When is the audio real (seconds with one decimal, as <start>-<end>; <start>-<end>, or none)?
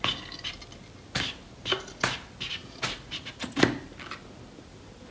0.0-2.6; 3.5-5.1